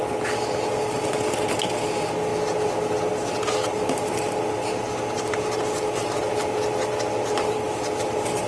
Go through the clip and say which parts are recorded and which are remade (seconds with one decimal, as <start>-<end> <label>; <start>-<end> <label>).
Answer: 0.0-8.5 recorded

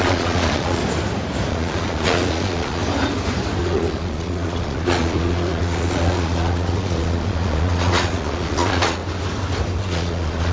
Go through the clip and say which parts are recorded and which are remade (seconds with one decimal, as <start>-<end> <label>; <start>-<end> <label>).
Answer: 0.0-0.8 remade; 0.8-1.5 recorded; 1.5-2.8 remade; 2.8-3.6 recorded; 3.6-9.0 remade; 9.0-9.8 recorded; 9.8-10.5 remade

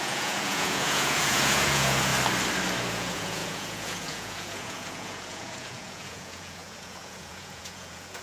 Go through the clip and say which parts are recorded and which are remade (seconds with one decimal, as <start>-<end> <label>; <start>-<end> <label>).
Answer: 0.0-2.1 remade; 2.1-2.9 recorded; 2.9-8.2 remade

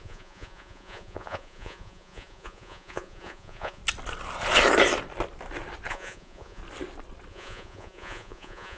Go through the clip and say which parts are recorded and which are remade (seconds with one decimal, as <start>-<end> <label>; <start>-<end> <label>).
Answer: 0.0-3.8 remade; 3.8-5.9 recorded; 5.9-6.6 remade; 6.6-7.3 recorded; 7.3-8.8 remade

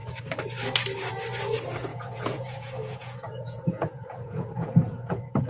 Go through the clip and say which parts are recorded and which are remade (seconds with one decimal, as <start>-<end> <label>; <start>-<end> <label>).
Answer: 0.0-1.9 recorded; 1.9-5.5 remade

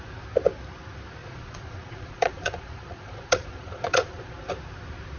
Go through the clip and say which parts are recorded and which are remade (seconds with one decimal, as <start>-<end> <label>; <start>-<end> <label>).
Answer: 0.0-1.2 recorded; 1.2-4.3 remade; 4.3-5.2 recorded